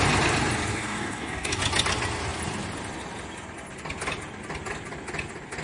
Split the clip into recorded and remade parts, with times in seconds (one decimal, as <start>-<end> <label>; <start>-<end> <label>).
0.0-0.7 recorded; 0.7-1.6 remade; 1.6-5.6 recorded